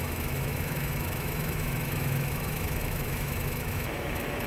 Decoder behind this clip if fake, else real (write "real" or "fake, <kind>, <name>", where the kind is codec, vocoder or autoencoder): fake, autoencoder, DAC-VAE